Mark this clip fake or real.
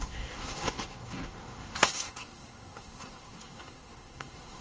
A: fake